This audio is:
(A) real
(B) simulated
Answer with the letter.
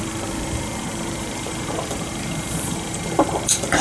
B